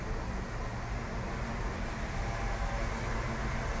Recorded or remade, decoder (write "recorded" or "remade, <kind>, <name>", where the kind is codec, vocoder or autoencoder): recorded